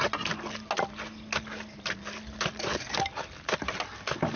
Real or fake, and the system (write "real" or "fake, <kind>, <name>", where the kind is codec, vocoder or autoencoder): real